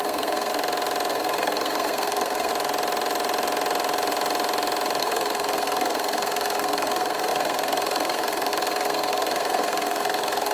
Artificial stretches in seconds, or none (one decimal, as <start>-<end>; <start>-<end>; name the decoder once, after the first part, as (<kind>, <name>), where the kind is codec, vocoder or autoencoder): 0.0-0.5 (codec, SNAC); 1.1-2.5; 5.0-10.5